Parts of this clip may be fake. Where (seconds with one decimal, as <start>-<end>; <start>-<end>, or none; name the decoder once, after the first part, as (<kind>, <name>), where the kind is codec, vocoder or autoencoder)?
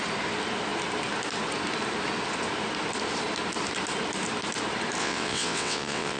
5.0-6.2 (vocoder, WaveNeXt)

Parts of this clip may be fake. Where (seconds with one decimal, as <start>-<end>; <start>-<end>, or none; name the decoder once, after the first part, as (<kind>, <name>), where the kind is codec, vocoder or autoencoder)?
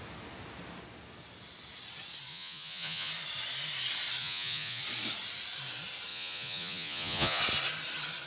2.3-3.1 (vocoder, Vocos); 4.2-4.8; 6.1-7.4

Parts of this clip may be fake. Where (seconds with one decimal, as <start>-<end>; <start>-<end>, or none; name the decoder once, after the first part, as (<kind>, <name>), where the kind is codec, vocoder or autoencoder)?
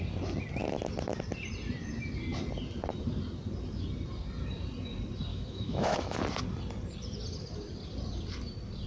5.3-6.2 (autoencoder, DAC-VAE)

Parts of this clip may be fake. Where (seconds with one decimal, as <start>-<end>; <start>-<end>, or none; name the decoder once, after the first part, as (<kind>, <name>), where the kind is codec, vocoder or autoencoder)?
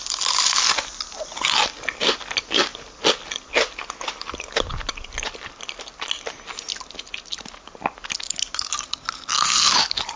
none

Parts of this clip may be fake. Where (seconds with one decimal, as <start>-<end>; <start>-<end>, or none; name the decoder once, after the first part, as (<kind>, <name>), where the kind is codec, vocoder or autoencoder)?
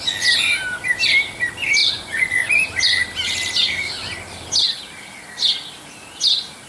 1.8-2.5 (vocoder, Vocos)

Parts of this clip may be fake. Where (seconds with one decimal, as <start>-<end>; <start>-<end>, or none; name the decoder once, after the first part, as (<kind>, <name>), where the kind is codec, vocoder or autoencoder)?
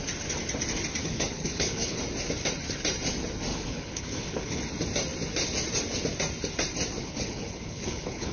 1.0-2.0 (codec, HILCodec); 3.5-4.6; 7.0-8.3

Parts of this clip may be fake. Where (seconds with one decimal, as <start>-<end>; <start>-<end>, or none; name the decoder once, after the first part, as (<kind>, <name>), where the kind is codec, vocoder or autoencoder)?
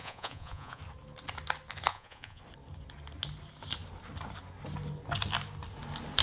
0.0-0.8 (vocoder, Vocos); 1.9-2.4